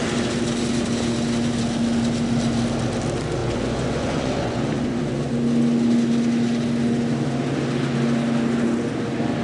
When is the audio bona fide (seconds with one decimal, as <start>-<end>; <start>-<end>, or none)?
0.0-3.4; 5.3-9.4